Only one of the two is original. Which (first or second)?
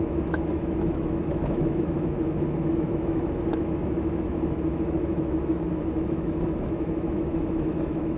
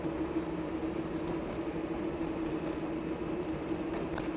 second